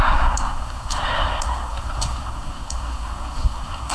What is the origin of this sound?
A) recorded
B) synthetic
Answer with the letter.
B